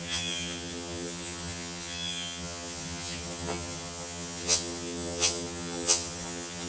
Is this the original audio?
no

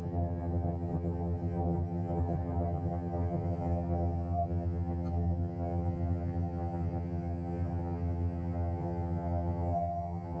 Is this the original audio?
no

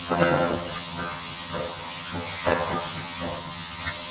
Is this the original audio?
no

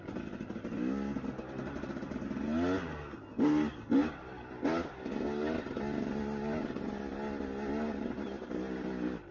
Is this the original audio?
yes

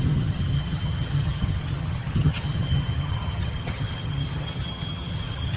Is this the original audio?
no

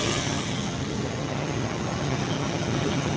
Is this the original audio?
no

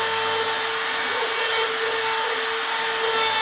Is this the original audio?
yes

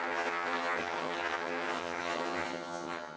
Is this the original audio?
no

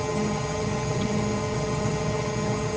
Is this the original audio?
no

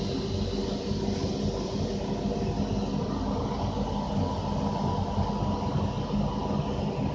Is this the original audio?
yes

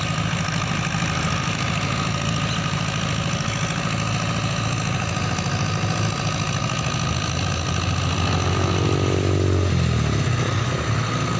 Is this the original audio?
yes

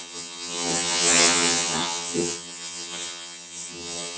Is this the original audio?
no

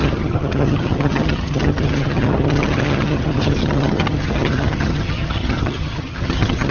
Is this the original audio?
no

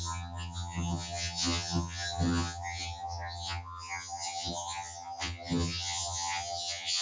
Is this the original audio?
no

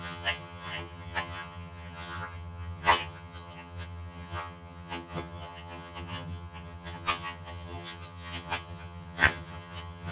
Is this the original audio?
no